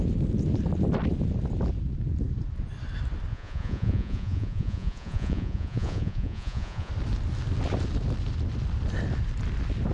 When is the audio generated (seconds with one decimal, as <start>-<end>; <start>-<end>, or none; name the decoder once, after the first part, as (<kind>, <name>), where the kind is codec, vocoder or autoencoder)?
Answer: 3.3-6.9 (vocoder, Vocos)